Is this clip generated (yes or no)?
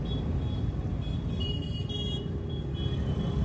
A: no